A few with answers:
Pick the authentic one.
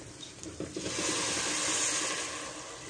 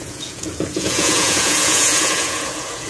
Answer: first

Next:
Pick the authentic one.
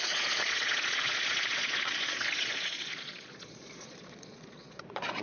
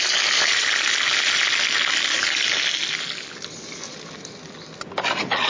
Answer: second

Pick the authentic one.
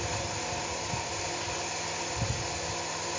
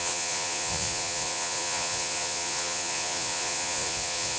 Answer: first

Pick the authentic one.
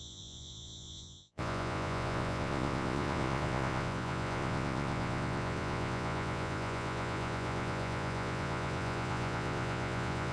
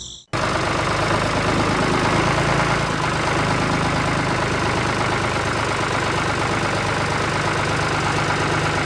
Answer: second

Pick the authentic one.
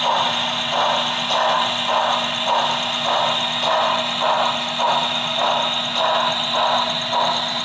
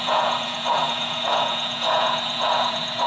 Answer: first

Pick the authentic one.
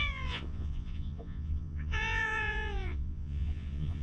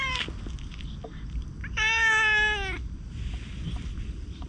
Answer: second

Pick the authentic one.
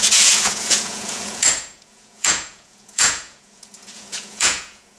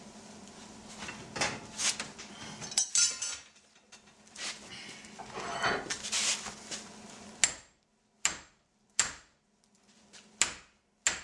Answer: second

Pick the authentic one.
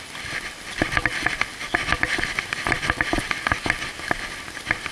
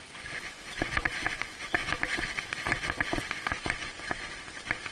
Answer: first